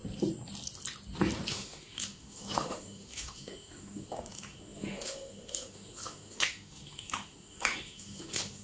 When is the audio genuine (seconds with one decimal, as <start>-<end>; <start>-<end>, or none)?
0.0-1.5